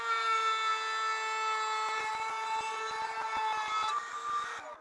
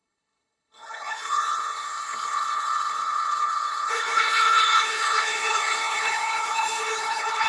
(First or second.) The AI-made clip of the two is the second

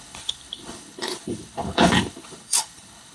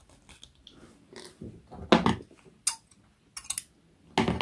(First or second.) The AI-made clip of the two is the first